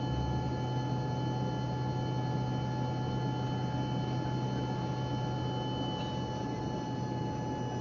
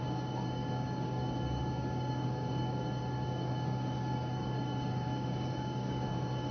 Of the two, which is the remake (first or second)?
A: second